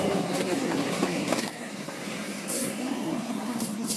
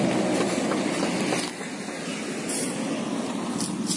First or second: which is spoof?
first